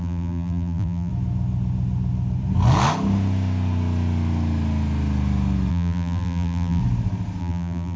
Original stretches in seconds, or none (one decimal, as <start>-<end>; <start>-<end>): 1.1-5.7; 6.8-7.4